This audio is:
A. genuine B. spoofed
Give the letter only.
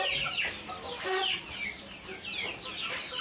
A